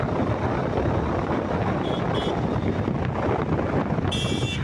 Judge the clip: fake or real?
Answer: real